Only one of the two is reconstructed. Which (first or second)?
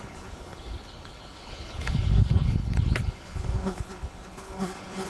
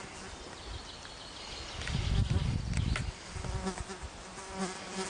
first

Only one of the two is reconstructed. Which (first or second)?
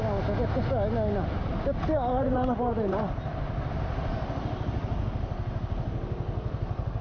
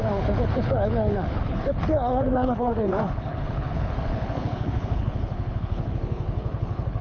second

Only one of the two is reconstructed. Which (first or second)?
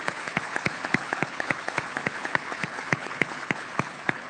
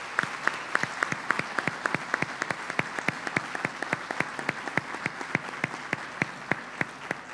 first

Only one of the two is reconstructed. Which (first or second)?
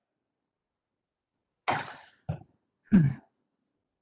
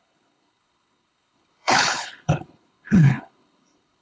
second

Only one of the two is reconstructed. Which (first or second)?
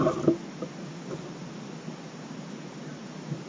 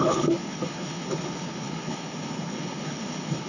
second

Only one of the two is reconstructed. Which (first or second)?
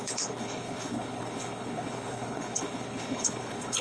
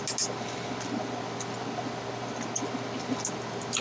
first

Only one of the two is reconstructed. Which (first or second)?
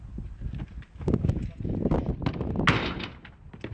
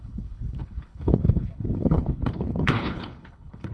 second